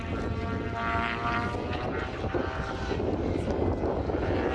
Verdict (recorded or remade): recorded